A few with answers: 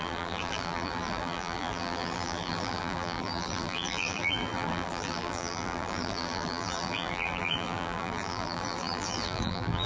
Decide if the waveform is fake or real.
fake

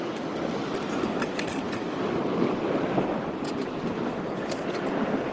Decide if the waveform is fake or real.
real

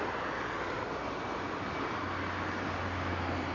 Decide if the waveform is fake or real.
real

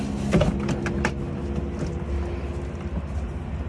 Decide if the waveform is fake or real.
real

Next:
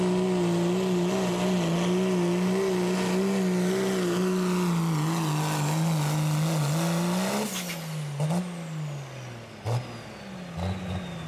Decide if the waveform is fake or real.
real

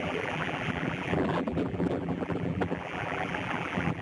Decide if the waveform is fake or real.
fake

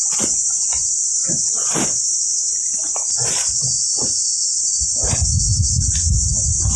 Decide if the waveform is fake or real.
real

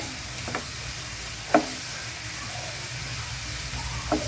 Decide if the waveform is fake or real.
real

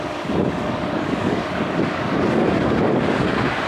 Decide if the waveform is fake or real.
fake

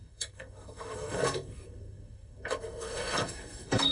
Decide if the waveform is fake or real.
fake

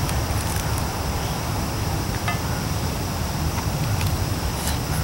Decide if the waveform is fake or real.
real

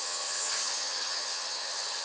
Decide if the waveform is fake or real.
fake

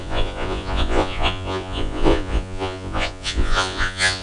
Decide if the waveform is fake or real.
fake